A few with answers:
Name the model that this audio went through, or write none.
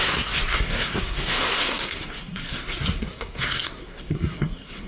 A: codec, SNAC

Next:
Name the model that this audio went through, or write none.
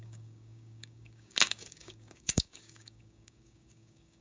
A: codec, DAC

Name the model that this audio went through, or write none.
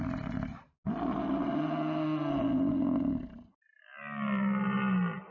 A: none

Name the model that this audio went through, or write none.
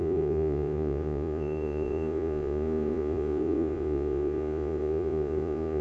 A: vocoder, Vocos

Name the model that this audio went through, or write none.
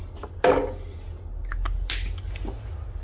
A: none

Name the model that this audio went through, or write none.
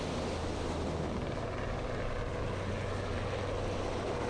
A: none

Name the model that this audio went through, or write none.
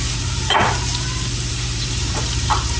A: vocoder, BigVGAN v2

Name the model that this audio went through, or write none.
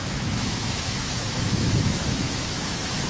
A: autoencoder, DAC-VAE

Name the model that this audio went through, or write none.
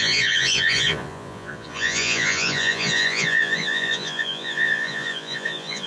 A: vocoder, Vocos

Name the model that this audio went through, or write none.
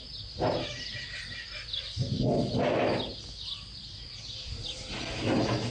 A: none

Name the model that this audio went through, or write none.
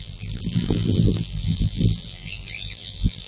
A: vocoder, BigVGAN v2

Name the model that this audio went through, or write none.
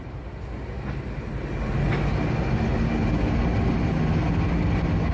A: none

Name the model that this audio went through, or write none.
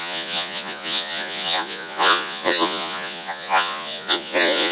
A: vocoder, Vocos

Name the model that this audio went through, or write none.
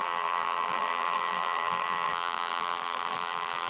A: vocoder, BigVGAN v2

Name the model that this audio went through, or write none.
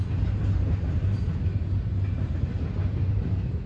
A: none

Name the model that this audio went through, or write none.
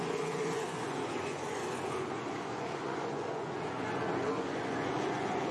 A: vocoder, Vocos